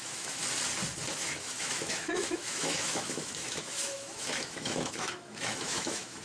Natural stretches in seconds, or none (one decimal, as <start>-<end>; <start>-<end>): 0.4-1.1